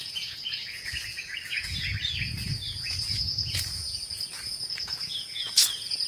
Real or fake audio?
fake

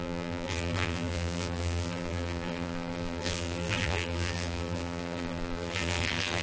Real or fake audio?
fake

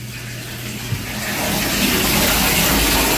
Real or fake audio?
real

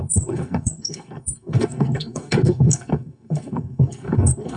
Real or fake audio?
fake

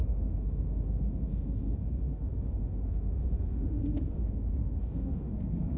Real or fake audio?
fake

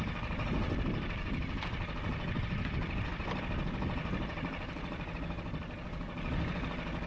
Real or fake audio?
real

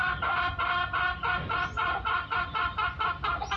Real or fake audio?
real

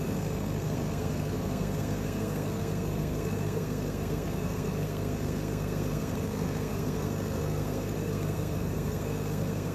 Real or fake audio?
fake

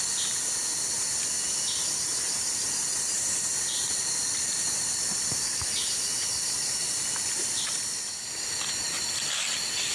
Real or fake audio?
real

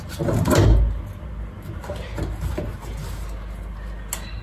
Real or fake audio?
real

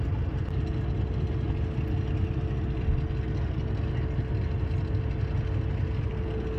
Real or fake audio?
real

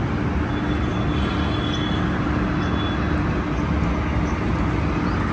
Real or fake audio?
real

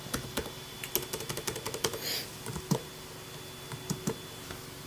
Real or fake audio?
real